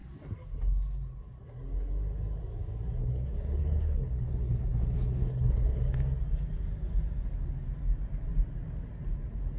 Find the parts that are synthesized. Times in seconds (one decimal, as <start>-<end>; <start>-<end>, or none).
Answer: 3.0-5.8